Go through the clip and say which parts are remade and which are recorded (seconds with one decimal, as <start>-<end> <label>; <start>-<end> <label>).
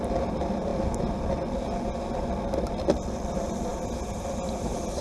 0.0-0.7 remade; 0.7-2.6 recorded; 2.6-5.0 remade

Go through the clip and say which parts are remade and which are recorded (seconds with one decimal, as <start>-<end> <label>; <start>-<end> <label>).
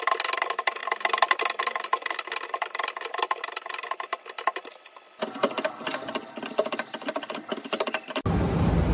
0.0-0.8 recorded; 0.8-1.4 remade; 1.4-8.9 recorded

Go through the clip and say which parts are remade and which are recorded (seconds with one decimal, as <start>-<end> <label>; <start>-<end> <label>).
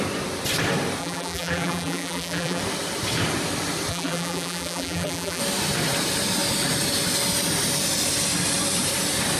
0.0-1.0 recorded; 1.0-2.6 remade; 2.6-3.9 recorded; 3.9-5.4 remade; 5.4-9.4 recorded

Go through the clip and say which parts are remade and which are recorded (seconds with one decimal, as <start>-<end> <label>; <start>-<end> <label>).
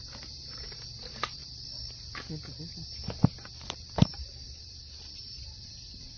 0.0-1.4 remade; 1.4-2.6 recorded; 2.6-6.2 remade